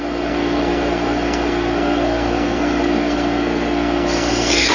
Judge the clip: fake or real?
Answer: fake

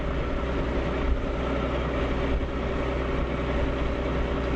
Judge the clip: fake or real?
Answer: real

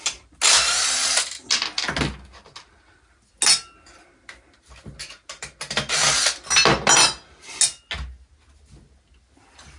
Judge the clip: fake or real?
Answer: real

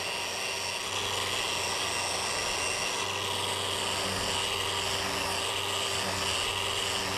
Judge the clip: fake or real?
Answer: real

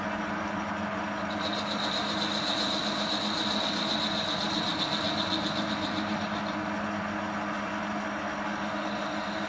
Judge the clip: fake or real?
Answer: real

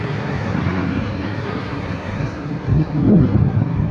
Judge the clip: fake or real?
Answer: fake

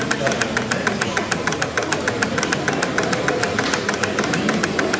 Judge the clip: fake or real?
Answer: real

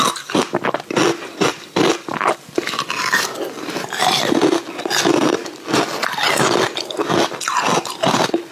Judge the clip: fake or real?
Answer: real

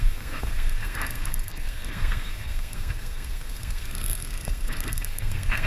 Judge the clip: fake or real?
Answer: fake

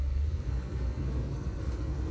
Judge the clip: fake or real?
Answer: fake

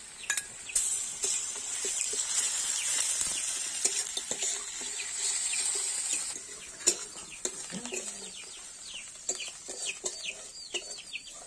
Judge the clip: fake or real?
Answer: real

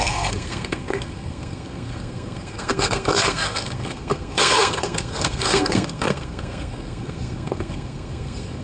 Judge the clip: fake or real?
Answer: fake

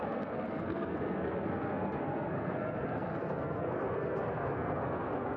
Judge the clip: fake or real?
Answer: fake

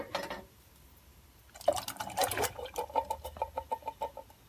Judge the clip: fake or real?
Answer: real